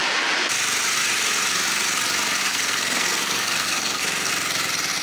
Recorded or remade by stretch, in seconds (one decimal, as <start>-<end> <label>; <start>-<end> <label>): 0.0-2.4 recorded; 2.4-4.3 remade; 4.3-5.0 recorded